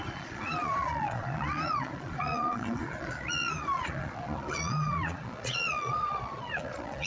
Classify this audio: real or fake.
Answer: fake